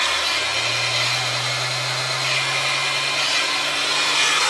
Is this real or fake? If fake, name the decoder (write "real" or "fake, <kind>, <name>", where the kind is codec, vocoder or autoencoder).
real